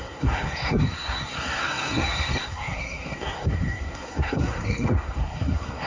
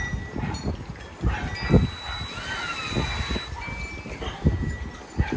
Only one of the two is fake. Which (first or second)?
first